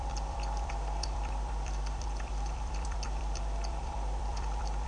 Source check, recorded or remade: remade